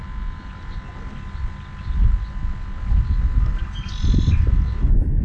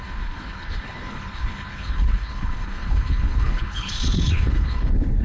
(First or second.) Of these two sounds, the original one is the first